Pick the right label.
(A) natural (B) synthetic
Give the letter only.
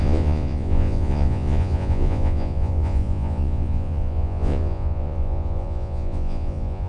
B